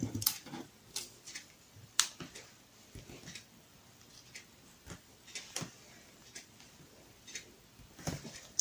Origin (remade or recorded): recorded